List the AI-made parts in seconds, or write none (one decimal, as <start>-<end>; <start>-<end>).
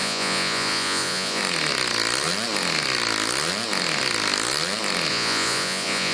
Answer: 0.0-1.4; 5.1-6.1